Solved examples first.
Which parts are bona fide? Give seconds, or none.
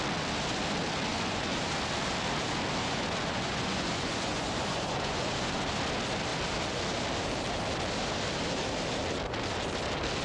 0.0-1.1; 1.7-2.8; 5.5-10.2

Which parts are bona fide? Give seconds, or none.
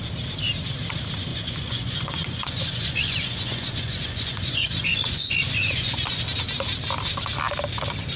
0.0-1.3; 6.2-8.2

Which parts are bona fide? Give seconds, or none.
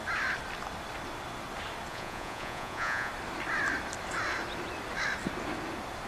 0.0-1.9; 3.1-6.1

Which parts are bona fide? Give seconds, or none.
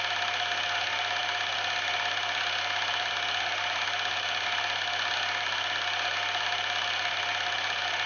0.0-8.1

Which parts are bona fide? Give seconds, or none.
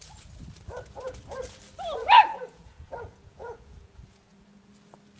0.0-2.3; 4.7-5.2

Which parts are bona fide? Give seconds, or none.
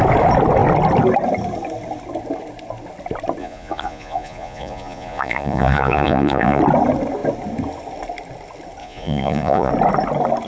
0.0-3.4; 6.6-8.8; 9.7-10.5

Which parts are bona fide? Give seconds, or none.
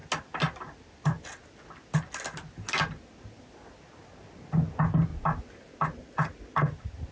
0.0-7.1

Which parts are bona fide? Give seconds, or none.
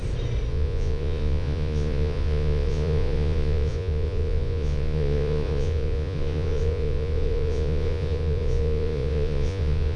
0.0-0.5